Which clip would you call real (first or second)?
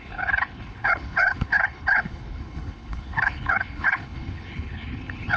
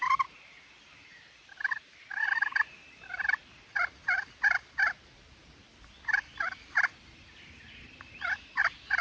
second